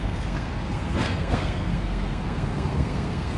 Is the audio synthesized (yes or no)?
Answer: yes